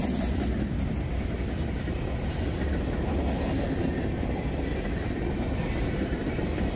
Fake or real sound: real